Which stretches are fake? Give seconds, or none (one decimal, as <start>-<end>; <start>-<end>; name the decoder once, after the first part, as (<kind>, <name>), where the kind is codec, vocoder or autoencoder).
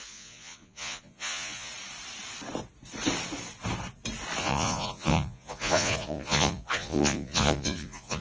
0.0-1.7 (vocoder, Vocos); 4.4-8.2